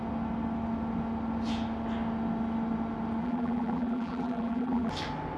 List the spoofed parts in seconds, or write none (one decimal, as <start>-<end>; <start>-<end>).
3.2-4.9